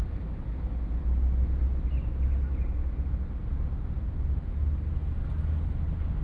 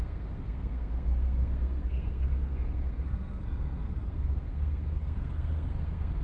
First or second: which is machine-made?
second